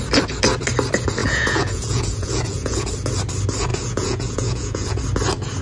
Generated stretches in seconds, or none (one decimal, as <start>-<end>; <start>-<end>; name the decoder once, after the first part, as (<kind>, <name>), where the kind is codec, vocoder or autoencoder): 1.2-2.9 (vocoder, Vocos); 3.7-5.0